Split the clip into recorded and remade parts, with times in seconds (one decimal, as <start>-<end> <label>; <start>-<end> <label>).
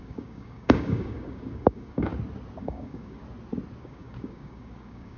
0.0-2.1 remade; 2.1-2.6 recorded; 2.6-3.2 remade; 3.2-3.8 recorded; 3.8-5.2 remade